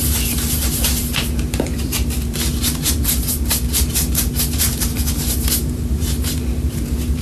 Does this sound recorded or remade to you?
remade